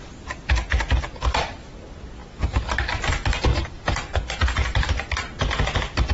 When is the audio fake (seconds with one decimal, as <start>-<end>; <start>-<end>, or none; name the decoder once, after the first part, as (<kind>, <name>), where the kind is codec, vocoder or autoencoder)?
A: 3.5-5.6 (vocoder, BigVGAN v2)